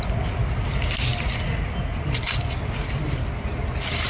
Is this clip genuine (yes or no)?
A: yes